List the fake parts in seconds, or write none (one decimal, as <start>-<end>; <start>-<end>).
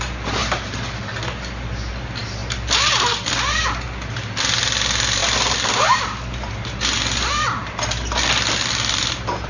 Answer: none